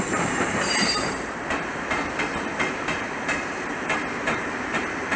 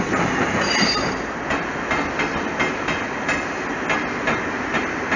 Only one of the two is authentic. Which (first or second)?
second